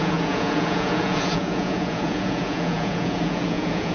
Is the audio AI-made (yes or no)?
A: yes